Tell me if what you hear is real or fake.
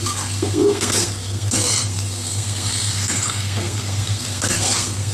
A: fake